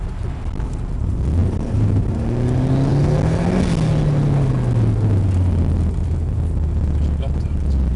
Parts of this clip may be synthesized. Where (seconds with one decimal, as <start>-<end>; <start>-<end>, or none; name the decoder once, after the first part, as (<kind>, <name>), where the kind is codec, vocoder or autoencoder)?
1.4-2.2 (vocoder, BigVGAN v2)